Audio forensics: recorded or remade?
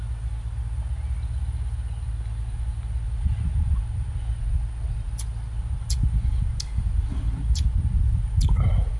recorded